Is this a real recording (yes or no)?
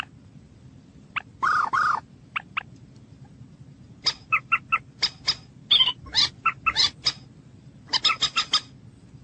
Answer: yes